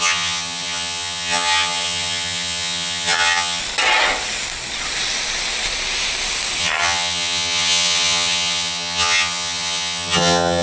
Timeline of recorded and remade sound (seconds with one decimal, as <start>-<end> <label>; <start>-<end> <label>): 0.0-3.6 remade; 3.6-6.6 recorded; 6.6-10.6 remade